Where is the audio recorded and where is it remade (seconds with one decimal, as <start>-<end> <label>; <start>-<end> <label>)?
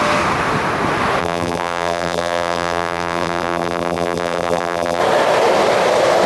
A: 0.0-1.2 recorded; 1.2-5.0 remade; 5.0-6.3 recorded